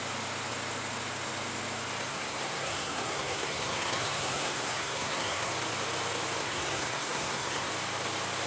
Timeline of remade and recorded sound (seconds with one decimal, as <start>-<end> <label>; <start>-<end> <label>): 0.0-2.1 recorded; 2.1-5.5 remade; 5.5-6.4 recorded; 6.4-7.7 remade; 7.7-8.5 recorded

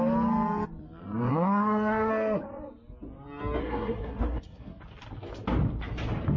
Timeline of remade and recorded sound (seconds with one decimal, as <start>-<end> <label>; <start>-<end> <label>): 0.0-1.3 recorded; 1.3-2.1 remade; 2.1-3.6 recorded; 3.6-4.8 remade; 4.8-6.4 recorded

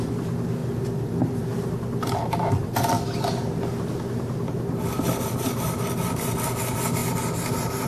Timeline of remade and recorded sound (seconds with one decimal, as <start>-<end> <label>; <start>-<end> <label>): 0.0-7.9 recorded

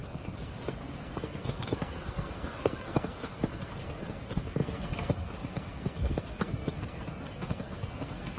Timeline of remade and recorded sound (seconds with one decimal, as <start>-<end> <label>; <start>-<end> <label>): 0.0-8.4 remade

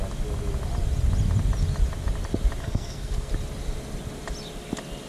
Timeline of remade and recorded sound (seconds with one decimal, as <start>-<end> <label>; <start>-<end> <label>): 0.0-2.6 recorded; 2.6-3.3 remade; 3.3-5.1 recorded

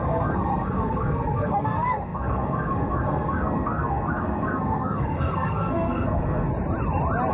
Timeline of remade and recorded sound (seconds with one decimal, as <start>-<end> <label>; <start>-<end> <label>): 0.0-6.5 remade; 6.5-7.3 recorded